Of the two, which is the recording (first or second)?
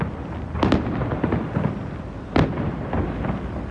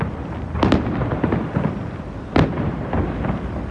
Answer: first